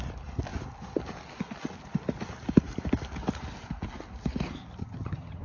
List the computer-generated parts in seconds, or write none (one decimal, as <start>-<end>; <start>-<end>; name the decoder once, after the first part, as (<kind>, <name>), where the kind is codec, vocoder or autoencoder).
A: 4.8-5.4 (vocoder, HiFi-GAN)